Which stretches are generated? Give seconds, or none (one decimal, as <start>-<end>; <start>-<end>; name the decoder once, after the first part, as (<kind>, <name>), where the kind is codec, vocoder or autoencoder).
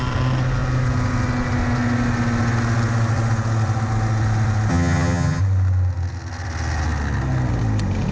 4.7-5.4 (vocoder, HiFi-GAN)